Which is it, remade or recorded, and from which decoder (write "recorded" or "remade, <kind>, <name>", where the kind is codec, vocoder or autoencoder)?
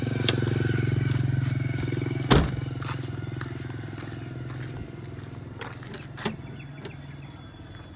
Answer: recorded